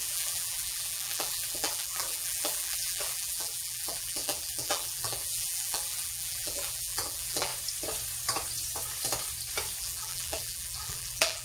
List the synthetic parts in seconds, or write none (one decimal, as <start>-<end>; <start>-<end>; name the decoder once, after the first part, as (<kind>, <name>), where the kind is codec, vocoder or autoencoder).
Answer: 0.0-7.5 (vocoder, BigVGAN v2); 9.8-11.4